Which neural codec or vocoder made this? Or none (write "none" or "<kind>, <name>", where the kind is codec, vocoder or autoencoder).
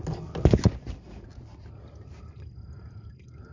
none